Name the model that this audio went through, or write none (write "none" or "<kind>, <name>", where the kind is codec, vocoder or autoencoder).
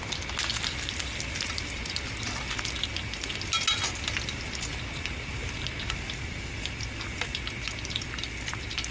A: none